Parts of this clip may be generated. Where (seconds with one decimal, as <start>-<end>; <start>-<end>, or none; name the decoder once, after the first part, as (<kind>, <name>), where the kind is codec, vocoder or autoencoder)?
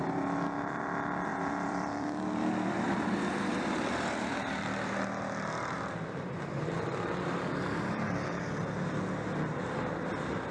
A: 1.3-3.8 (vocoder, BigVGAN v2); 4.3-8.4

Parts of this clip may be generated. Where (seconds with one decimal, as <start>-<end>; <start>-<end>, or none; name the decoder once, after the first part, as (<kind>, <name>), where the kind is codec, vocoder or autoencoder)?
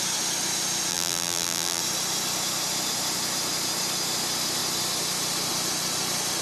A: 0.9-1.8 (vocoder, BigVGAN v2)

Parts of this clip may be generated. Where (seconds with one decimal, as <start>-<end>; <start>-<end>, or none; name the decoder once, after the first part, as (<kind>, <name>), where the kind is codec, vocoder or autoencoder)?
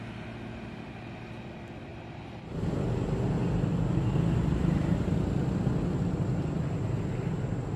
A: none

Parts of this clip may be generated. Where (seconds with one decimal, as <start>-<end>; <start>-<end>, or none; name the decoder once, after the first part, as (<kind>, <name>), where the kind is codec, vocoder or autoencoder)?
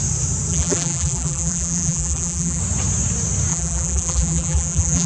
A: 0.5-2.6 (vocoder, BigVGAN v2); 3.5-5.1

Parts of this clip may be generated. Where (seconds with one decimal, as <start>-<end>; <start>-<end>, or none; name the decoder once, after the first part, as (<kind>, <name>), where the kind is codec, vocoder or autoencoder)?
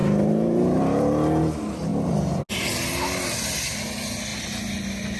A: 0.0-1.4 (vocoder, BigVGAN v2); 1.9-2.4